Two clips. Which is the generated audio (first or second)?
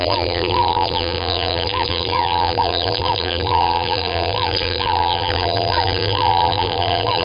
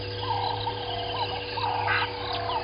first